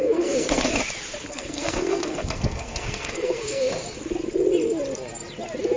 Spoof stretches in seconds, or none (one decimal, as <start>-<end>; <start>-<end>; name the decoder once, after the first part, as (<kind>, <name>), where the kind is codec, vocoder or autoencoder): 0.0-0.7 (codec, SNAC); 1.3-3.7